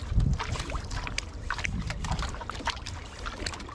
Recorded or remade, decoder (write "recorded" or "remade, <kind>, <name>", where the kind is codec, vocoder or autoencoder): recorded